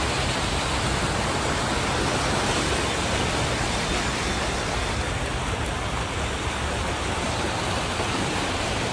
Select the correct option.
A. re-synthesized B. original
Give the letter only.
B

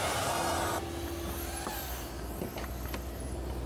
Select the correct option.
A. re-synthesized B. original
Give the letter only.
B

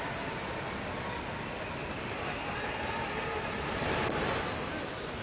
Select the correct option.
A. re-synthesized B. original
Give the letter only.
B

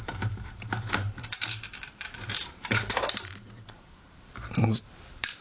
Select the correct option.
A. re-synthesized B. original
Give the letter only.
A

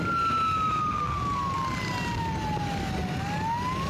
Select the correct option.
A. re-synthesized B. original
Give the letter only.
B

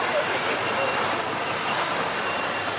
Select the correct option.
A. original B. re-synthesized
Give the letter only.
B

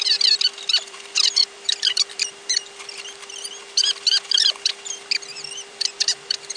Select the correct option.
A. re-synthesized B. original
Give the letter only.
A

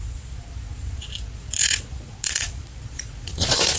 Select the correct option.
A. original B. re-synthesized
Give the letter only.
B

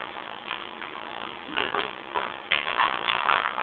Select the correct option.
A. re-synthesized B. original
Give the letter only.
A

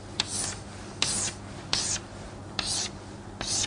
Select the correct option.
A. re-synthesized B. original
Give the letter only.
B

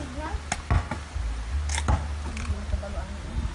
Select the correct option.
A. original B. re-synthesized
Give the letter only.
A